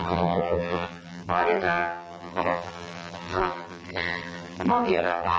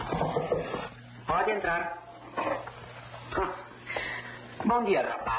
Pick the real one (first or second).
second